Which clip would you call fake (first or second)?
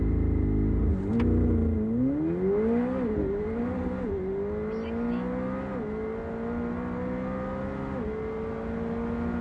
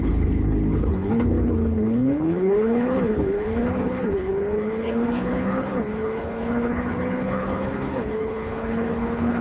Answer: second